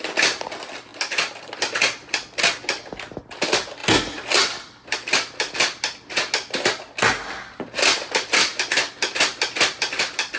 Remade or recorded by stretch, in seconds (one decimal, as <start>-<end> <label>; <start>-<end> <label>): 0.0-10.4 recorded